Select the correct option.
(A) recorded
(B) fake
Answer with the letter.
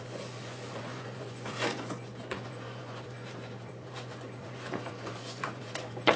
B